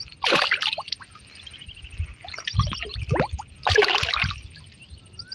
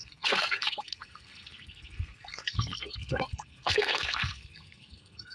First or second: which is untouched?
first